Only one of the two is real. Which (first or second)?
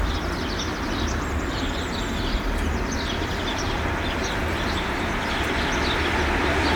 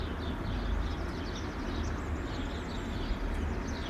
second